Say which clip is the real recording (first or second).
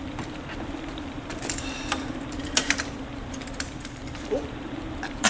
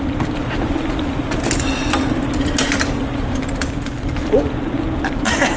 second